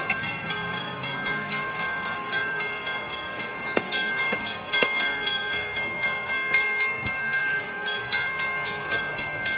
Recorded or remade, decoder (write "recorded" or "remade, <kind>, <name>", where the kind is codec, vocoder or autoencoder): remade, codec, SNAC